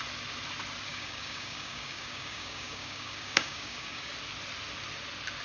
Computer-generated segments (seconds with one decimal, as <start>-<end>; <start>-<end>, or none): 0.9-4.1